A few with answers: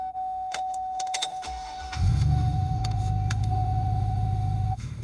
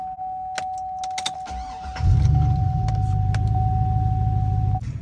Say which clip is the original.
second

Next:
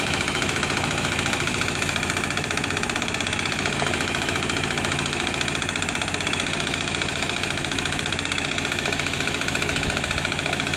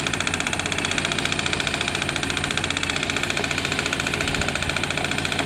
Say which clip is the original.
second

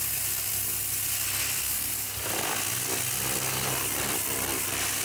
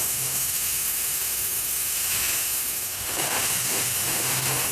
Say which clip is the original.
first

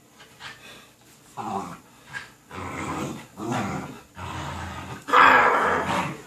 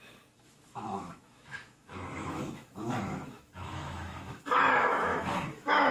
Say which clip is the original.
first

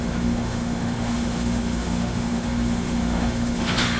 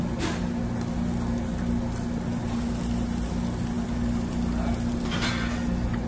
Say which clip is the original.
second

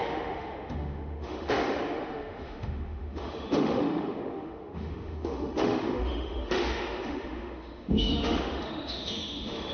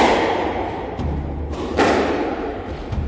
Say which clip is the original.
second